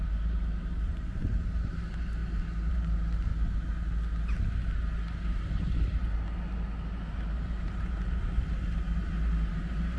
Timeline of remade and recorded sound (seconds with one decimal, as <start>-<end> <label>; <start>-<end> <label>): 0.0-2.2 remade; 2.2-2.7 recorded; 2.7-3.3 remade; 3.3-5.3 recorded; 5.3-6.0 remade; 6.0-7.1 recorded; 7.1-10.0 remade